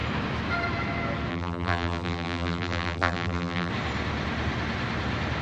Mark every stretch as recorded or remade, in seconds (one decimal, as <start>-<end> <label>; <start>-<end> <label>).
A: 0.0-1.3 recorded; 1.3-3.7 remade; 3.7-5.4 recorded